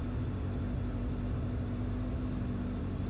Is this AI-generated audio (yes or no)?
no